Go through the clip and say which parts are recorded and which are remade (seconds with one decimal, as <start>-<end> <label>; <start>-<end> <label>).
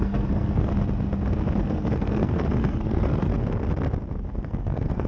0.0-0.7 remade; 0.7-1.6 recorded; 1.6-3.3 remade; 3.3-4.4 recorded; 4.4-5.1 remade